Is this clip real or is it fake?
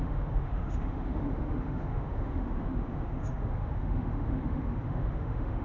fake